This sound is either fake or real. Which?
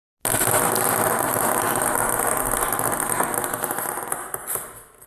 real